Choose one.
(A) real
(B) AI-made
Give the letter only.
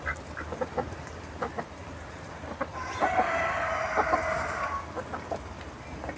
A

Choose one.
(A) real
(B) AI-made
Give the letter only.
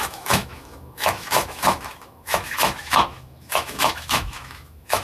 B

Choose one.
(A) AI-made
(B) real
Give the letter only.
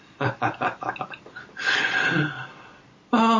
B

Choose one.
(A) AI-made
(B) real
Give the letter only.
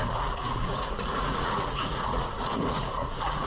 A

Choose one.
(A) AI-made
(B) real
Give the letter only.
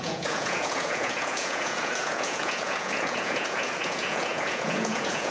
A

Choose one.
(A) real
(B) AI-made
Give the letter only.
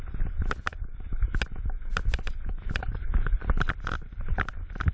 A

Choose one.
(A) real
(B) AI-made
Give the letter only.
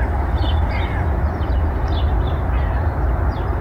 A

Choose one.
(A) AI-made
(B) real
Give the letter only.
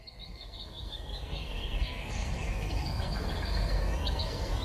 A